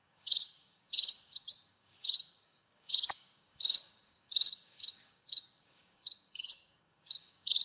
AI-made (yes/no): yes